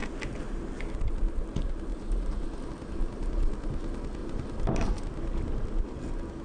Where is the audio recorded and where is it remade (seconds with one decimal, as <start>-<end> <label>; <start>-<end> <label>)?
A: 0.0-1.9 recorded; 1.9-2.7 remade; 2.7-4.2 recorded; 4.2-4.9 remade; 4.9-6.4 recorded

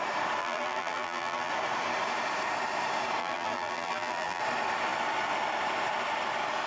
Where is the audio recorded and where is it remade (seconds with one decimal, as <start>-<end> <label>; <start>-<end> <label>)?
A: 0.0-0.4 recorded; 0.4-1.5 remade; 1.5-3.2 recorded; 3.2-4.4 remade; 4.4-6.7 recorded

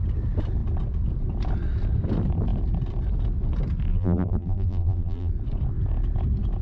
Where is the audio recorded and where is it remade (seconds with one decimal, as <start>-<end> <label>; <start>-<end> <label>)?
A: 0.0-3.9 recorded; 3.9-5.3 remade; 5.3-6.6 recorded

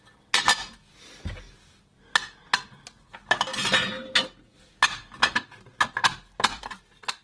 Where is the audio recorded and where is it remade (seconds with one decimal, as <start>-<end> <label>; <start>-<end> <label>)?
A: 0.0-3.5 recorded; 3.5-4.1 remade; 4.1-6.0 recorded; 6.0-6.6 remade; 6.6-7.2 recorded

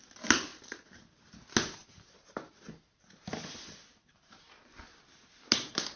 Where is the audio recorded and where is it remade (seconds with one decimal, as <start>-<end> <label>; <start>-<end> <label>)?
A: 0.0-6.0 recorded